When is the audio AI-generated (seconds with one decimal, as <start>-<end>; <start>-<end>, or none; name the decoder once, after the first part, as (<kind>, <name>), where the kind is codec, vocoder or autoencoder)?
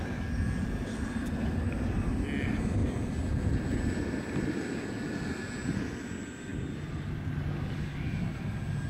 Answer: none